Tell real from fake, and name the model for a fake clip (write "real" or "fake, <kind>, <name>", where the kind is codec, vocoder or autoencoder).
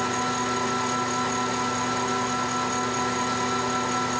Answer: real